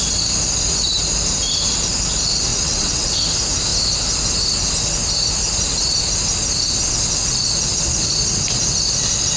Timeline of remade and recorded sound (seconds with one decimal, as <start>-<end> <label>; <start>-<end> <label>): 0.0-2.5 recorded; 2.5-3.2 remade; 3.2-9.4 recorded